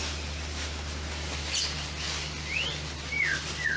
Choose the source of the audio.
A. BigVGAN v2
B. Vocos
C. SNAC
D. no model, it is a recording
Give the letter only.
D